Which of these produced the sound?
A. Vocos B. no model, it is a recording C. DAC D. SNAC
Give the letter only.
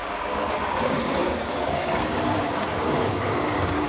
C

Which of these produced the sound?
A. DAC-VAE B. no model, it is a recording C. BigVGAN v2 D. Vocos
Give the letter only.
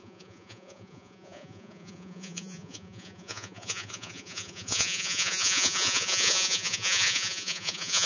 D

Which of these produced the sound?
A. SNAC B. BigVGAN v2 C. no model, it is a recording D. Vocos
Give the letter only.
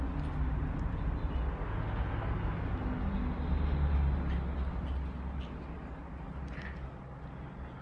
C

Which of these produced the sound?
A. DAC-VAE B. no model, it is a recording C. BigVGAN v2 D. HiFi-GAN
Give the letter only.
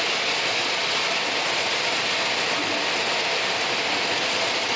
B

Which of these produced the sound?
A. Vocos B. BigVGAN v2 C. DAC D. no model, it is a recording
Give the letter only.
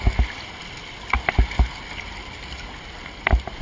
D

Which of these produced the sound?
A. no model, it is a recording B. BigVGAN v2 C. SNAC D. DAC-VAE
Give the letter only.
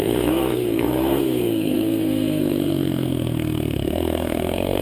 C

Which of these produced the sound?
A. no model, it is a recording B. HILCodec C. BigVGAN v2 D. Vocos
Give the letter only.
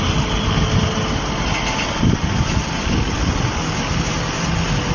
A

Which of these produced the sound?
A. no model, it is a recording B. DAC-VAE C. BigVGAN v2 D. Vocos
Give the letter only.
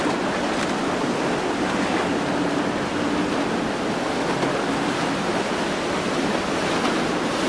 A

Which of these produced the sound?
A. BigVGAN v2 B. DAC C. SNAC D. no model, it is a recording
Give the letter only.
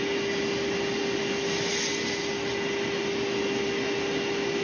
D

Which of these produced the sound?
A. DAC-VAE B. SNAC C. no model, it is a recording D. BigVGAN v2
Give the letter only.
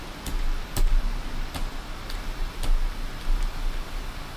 C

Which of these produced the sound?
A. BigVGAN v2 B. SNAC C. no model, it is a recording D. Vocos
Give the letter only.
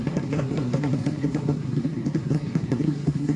B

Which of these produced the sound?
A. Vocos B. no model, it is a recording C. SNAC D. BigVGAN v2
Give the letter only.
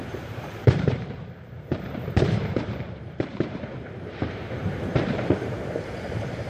D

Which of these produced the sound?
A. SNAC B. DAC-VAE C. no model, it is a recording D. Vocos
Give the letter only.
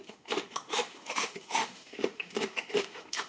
B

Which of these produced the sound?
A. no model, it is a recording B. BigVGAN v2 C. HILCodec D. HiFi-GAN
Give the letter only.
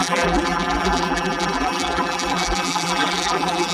B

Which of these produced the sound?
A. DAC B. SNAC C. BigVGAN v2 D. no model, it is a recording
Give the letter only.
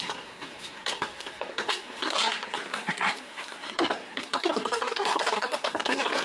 B